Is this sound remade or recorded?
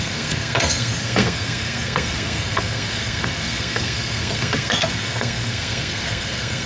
remade